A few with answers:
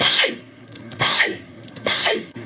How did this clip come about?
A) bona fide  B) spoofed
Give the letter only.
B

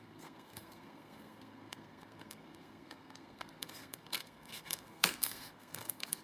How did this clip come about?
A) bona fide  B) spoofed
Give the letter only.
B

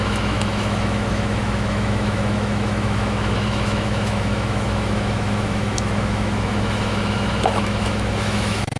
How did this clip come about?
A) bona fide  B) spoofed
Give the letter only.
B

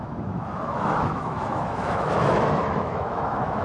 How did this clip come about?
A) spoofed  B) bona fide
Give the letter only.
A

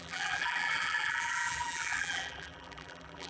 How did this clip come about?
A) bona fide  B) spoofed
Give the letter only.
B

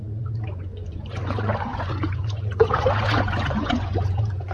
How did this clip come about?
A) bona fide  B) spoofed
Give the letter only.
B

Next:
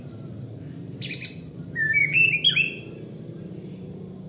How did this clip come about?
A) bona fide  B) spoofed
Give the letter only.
A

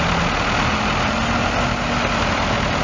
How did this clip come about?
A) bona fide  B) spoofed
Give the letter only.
A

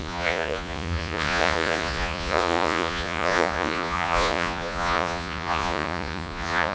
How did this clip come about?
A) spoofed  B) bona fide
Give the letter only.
A